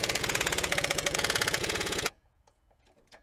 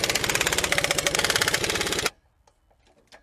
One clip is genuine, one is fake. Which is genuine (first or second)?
second